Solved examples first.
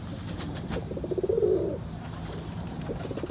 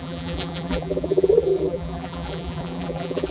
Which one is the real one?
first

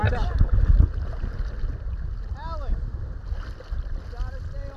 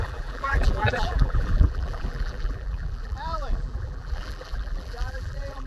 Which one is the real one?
first